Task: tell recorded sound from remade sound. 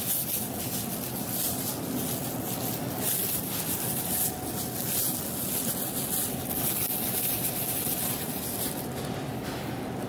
recorded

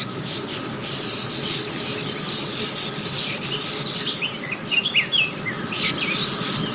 recorded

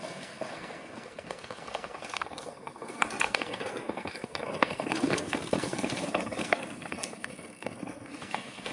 remade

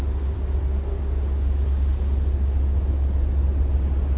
recorded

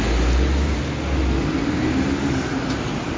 recorded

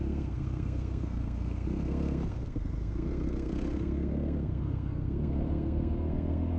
remade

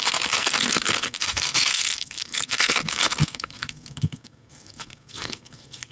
remade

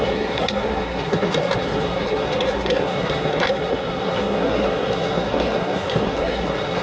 remade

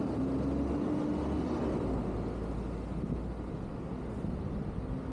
recorded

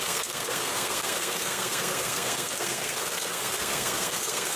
remade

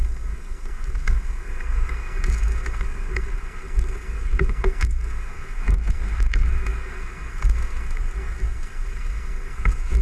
remade